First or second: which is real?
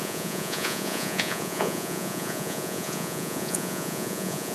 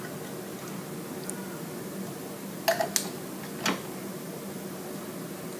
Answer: second